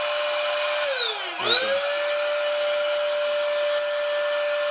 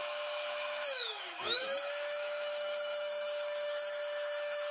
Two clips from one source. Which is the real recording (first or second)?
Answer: first